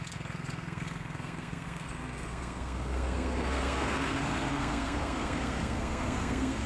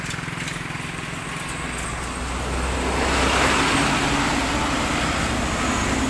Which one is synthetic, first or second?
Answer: first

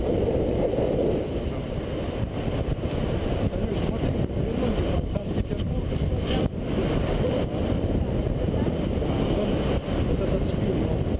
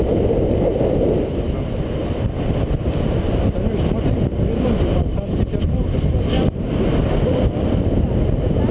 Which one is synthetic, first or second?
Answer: first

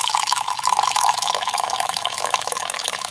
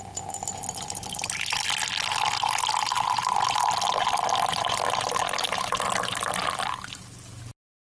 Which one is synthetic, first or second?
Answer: first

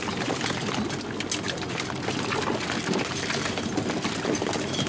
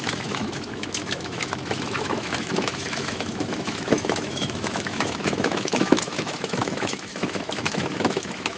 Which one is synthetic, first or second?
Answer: second